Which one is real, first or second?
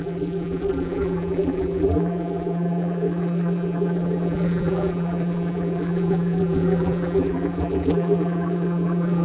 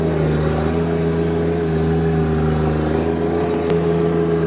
second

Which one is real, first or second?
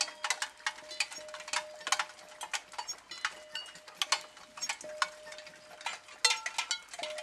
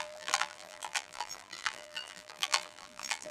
first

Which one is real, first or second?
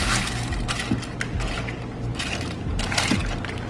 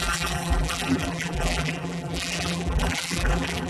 first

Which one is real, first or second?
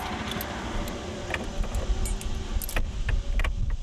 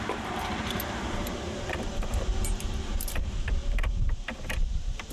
first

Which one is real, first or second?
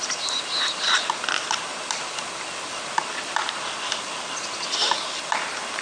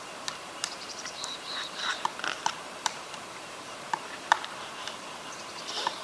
first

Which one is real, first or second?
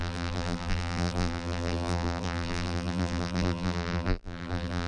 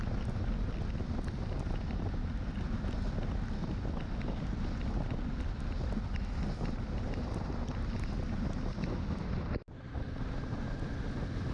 second